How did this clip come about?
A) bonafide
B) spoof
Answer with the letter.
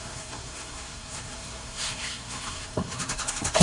B